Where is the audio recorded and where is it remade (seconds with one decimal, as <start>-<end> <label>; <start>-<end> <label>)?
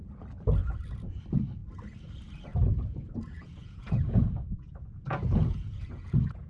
0.0-0.6 recorded; 0.6-1.2 remade; 1.2-2.5 recorded; 2.5-6.5 remade